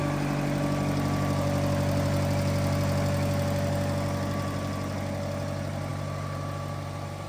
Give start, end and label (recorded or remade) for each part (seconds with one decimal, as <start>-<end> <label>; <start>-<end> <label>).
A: 0.0-7.3 recorded